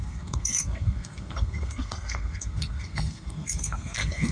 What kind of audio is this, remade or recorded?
remade